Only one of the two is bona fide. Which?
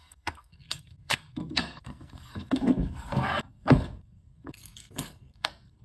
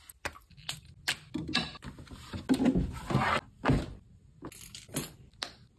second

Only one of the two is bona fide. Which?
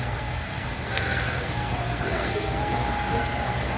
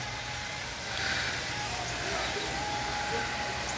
second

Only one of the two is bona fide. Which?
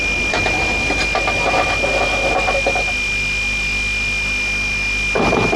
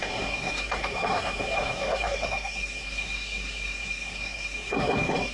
first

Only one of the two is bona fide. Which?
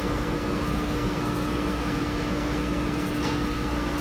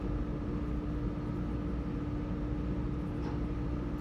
second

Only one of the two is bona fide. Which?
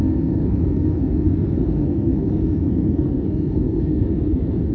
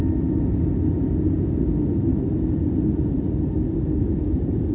second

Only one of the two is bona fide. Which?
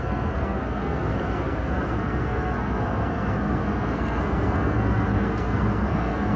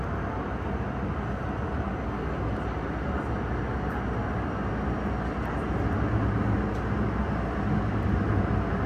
second